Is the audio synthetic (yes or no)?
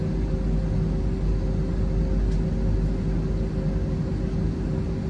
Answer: no